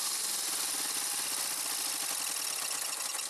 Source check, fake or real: real